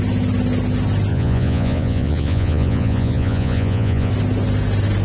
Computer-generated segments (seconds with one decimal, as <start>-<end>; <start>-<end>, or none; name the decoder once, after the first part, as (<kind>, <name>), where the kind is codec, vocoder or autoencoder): 1.1-4.1 (vocoder, Vocos)